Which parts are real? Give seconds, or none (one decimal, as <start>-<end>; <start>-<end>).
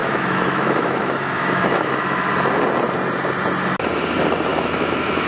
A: 2.3-4.5